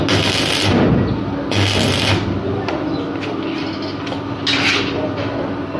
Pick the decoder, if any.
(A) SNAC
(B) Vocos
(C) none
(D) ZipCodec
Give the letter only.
C